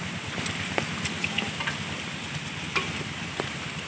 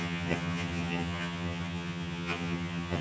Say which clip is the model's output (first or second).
second